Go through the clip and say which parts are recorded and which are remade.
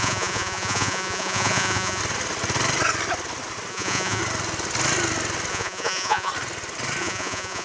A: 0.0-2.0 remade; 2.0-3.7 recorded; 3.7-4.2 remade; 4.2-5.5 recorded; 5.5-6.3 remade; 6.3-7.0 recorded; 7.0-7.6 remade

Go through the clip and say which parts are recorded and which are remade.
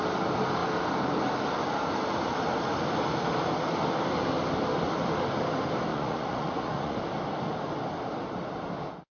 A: 0.0-5.9 recorded; 5.9-7.0 remade; 7.0-9.1 recorded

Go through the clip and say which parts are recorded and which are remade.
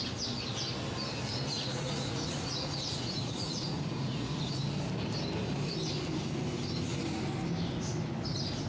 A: 0.0-1.5 recorded; 1.5-4.6 remade; 4.6-8.7 recorded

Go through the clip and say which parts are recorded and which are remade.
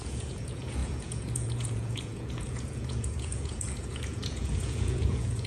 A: 0.0-5.5 remade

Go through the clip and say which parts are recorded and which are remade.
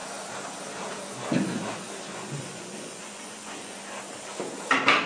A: 0.0-2.1 recorded; 2.1-3.8 remade; 3.8-5.1 recorded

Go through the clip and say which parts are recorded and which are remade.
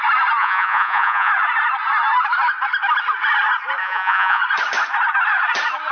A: 0.0-0.4 recorded; 0.4-1.3 remade; 1.3-3.8 recorded; 3.8-4.4 remade; 4.4-5.9 recorded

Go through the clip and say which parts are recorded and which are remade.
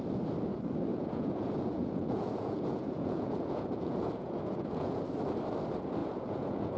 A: 0.0-0.9 recorded; 0.9-5.0 remade; 5.0-6.0 recorded; 6.0-6.8 remade